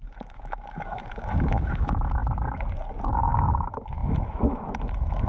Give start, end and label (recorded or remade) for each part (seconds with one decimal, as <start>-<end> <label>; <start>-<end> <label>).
0.0-2.2 remade; 2.2-3.1 recorded; 3.1-5.3 remade